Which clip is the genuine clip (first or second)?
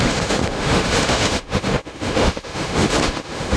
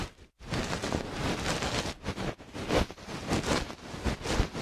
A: second